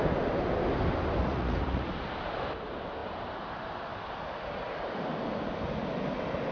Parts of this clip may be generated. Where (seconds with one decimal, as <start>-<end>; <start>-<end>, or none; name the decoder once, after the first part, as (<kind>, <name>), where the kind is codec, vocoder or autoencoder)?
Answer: 1.2-1.9 (vocoder, Vocos)